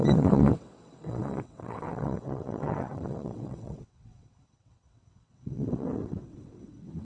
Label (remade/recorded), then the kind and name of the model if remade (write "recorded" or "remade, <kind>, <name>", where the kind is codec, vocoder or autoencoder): remade, vocoder, WaveNeXt